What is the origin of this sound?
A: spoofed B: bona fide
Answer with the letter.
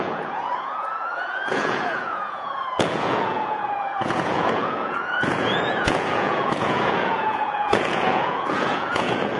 A